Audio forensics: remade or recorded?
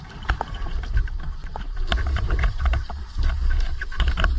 remade